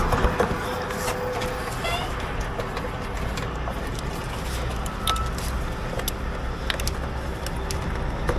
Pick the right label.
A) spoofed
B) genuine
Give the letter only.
B